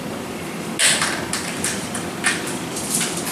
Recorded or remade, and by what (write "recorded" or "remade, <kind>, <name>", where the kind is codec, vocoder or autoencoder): recorded